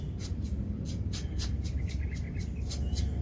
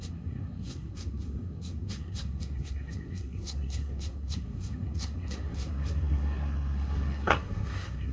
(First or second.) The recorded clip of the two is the first